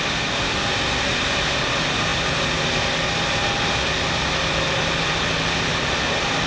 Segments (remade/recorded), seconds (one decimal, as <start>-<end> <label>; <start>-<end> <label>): 0.0-6.5 recorded